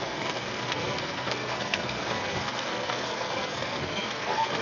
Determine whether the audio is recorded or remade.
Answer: remade